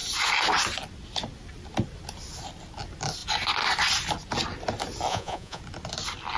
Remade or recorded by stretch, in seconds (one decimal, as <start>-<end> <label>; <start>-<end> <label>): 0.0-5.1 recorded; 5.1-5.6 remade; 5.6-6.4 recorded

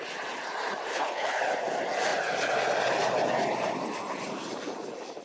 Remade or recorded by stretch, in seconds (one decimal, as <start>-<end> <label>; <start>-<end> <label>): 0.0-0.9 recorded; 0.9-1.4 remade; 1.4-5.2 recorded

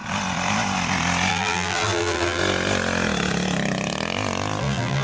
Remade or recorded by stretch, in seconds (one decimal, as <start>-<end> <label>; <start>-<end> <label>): 0.0-1.3 recorded; 1.3-2.4 remade; 2.4-4.6 recorded; 4.6-5.0 remade

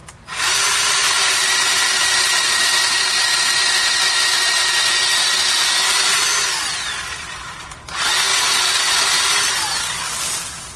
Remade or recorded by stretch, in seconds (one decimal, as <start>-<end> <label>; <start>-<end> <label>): 0.0-8.3 recorded; 8.3-9.5 remade; 9.5-10.8 recorded